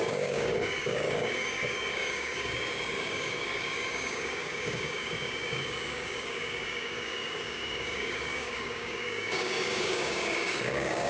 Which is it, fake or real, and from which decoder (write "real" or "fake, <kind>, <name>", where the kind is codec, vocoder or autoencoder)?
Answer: fake, codec, DAC